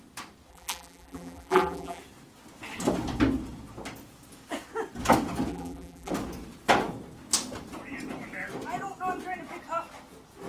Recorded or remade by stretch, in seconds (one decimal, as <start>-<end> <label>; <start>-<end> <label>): 0.0-0.5 recorded; 0.5-2.0 remade; 2.0-5.5 recorded; 5.5-6.1 remade; 6.1-10.5 recorded